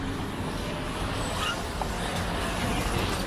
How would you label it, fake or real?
real